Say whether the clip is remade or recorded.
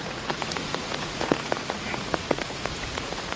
remade